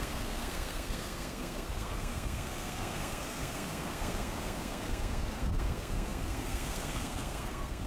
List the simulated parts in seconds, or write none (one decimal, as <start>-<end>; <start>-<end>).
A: 0.0-7.9